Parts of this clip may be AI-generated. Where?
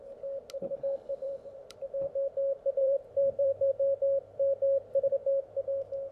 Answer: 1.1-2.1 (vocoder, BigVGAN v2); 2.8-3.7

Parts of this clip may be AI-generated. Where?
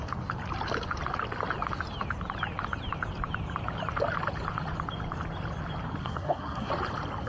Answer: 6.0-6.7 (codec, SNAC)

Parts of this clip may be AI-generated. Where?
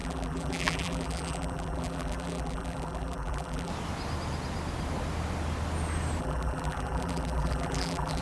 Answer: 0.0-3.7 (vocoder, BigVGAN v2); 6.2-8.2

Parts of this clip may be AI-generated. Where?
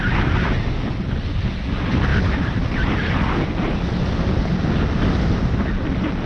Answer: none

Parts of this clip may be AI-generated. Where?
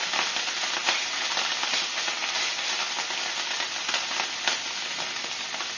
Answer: none